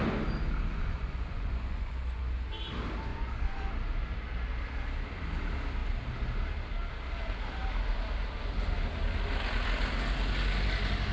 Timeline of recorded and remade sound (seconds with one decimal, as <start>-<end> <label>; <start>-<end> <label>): 0.0-0.7 recorded; 0.7-2.2 remade; 2.2-3.1 recorded; 3.1-3.7 remade; 3.7-11.1 recorded